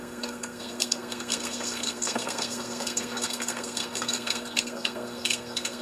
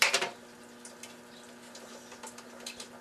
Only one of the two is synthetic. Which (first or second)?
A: first